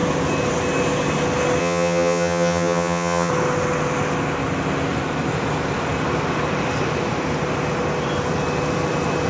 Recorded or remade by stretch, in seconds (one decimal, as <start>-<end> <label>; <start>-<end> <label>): 0.0-1.6 recorded; 1.6-3.3 remade; 3.3-9.3 recorded